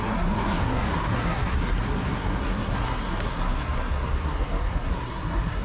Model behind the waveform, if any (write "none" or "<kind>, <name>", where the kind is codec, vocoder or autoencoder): codec, SNAC